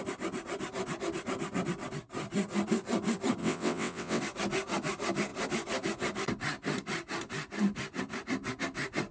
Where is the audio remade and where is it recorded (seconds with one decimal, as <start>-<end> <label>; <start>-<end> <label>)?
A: 0.0-3.4 recorded; 3.4-4.2 remade; 4.2-9.1 recorded